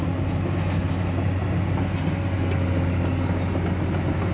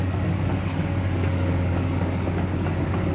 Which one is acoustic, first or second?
first